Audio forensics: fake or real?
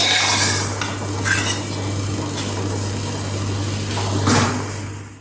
real